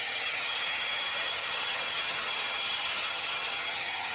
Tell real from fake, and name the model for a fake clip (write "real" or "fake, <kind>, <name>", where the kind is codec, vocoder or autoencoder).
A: fake, vocoder, HiFi-GAN